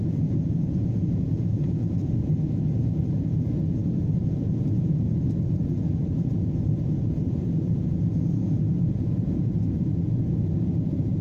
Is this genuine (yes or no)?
no